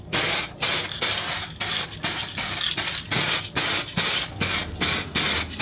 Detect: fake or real real